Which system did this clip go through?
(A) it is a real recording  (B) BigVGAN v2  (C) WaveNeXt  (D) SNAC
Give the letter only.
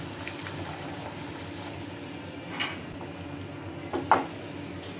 A